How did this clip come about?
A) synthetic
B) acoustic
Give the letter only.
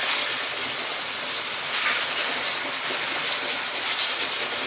B